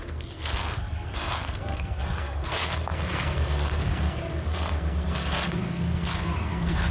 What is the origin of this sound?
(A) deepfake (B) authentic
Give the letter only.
A